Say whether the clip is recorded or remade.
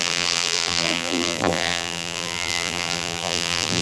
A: remade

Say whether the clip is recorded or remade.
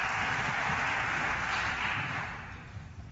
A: recorded